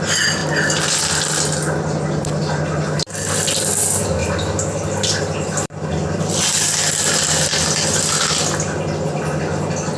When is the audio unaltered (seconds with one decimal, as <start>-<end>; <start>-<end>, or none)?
0.0-0.4; 1.0-4.2; 5.8-10.0